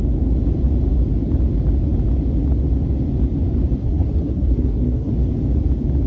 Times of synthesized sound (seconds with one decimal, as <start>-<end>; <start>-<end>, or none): 3.8-5.1